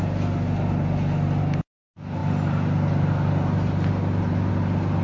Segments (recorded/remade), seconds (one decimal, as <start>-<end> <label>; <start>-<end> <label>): 0.0-5.0 recorded